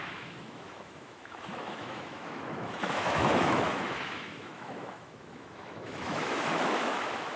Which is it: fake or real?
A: fake